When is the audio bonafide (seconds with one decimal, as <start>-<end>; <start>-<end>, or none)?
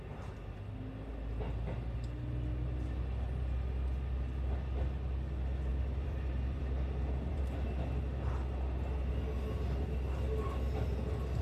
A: 0.0-5.7; 7.4-11.4